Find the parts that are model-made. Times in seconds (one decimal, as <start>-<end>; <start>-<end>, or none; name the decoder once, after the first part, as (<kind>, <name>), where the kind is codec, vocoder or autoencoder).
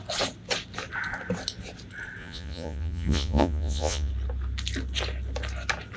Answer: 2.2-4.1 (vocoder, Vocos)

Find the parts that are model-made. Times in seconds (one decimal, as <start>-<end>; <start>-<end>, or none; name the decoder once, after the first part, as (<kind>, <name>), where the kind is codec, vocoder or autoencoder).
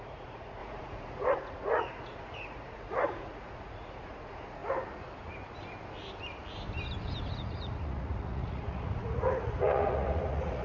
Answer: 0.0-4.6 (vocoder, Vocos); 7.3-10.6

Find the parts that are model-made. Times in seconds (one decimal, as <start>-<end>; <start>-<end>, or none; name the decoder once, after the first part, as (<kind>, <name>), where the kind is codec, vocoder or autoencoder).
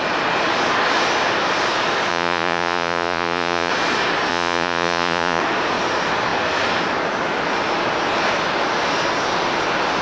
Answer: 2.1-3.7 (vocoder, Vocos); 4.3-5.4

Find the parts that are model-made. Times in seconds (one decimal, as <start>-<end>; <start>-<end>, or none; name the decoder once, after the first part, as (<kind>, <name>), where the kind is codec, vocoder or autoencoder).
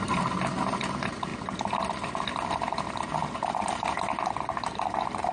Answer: none